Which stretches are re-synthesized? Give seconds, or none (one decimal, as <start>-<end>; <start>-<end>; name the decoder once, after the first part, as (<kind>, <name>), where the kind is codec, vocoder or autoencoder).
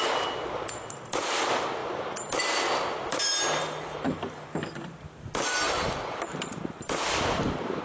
1.8-2.3 (vocoder, BigVGAN v2); 3.1-4.9; 6.3-7.8